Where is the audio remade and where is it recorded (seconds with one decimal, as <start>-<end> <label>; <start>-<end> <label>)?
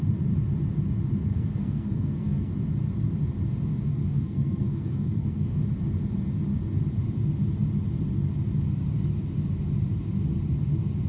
0.0-1.3 recorded; 1.3-2.5 remade; 2.5-3.9 recorded; 3.9-5.6 remade; 5.6-11.1 recorded